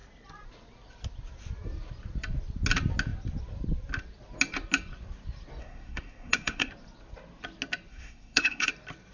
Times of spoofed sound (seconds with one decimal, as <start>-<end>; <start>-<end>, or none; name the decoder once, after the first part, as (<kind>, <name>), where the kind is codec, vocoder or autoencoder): 5.6-6.7 (codec, SNAC); 7.9-8.7